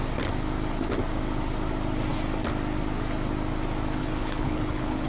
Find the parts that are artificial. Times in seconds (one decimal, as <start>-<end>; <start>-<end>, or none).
4.0-5.1